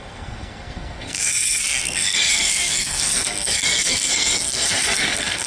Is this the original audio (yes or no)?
no